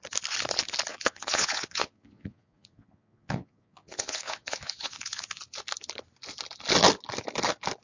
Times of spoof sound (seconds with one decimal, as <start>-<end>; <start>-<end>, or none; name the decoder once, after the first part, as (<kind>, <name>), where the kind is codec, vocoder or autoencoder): 0.9-5.4 (vocoder, Vocos)